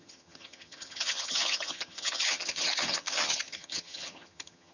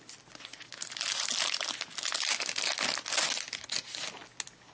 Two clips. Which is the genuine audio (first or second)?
second